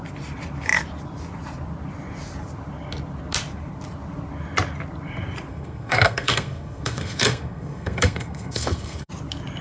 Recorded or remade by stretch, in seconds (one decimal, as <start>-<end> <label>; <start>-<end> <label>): 0.0-5.5 recorded; 5.5-9.1 remade; 9.1-9.6 recorded